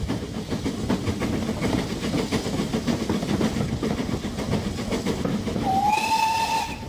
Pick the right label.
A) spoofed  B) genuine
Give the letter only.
B